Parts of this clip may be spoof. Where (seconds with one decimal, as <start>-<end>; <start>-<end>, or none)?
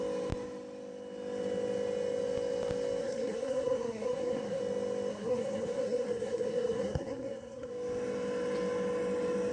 3.0-4.6; 5.1-7.7